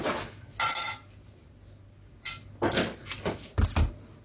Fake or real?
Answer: real